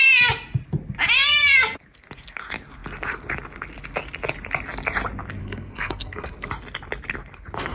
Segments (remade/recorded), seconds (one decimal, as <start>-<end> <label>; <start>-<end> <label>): 0.0-5.4 recorded; 5.4-6.5 remade; 6.5-7.7 recorded